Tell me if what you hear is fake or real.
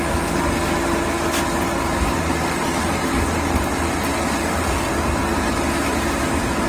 real